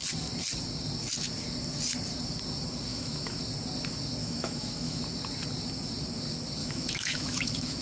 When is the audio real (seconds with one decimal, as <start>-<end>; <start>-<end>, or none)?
0.0-2.9; 3.4-4.2; 5.0-6.6